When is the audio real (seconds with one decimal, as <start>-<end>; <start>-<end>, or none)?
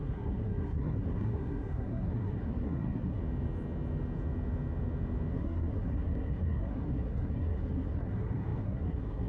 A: 3.2-5.3